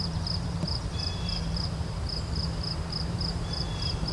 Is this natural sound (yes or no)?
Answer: no